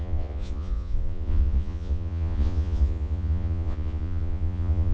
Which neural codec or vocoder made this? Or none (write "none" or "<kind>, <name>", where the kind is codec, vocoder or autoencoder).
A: vocoder, Vocos